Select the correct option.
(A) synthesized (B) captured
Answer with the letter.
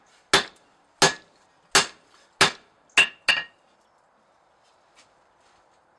B